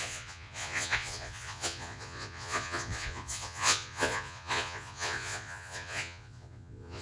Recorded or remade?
remade